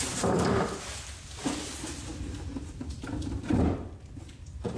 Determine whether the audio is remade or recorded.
remade